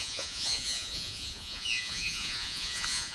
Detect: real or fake fake